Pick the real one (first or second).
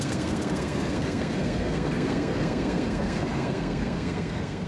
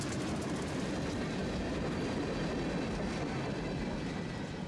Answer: second